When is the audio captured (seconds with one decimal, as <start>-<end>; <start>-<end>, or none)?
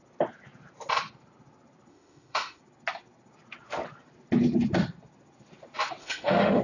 0.0-1.9; 2.6-6.0